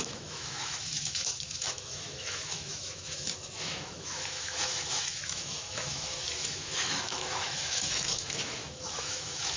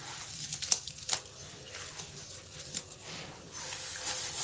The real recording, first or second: second